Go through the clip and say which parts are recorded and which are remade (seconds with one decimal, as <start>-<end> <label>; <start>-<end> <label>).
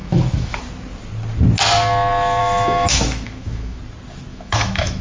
0.0-0.6 remade; 0.6-2.4 recorded; 2.4-3.8 remade; 3.8-4.3 recorded; 4.3-5.0 remade